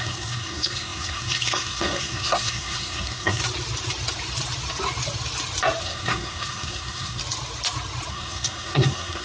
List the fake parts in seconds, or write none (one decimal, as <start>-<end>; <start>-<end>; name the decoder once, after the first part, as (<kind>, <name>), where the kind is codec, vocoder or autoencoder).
0.0-3.4 (codec, SNAC); 5.8-7.2; 8.1-9.2